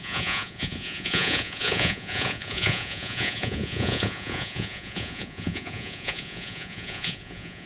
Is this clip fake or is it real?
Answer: fake